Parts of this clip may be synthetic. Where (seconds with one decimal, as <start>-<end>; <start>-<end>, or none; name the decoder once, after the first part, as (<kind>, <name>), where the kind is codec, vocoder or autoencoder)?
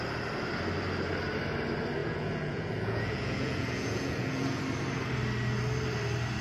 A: 2.0-4.6 (vocoder, Vocos)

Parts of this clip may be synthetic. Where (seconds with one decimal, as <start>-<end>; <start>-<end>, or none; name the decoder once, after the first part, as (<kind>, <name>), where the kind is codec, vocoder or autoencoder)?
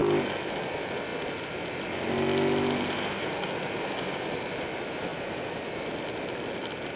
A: none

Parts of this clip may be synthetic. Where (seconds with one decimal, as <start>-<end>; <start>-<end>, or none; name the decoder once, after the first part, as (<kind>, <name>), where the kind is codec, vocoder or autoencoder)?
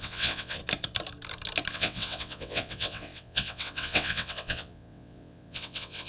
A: 0.0-0.6 (vocoder, WaveNeXt); 1.7-6.1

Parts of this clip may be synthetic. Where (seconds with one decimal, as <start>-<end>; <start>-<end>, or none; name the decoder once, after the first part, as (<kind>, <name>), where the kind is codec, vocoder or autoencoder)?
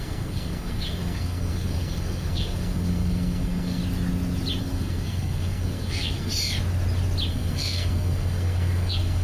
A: 0.0-3.8 (codec, SNAC); 4.6-6.3; 7.3-9.2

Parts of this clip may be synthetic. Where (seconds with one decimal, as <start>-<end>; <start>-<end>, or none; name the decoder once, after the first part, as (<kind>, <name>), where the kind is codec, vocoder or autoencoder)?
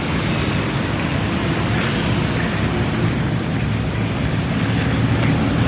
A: none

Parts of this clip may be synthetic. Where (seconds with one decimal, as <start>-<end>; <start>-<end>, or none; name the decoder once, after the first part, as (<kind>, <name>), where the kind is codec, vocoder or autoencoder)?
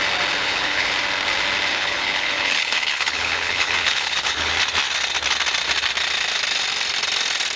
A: 0.4-0.9 (codec, HILCodec); 1.7-4.5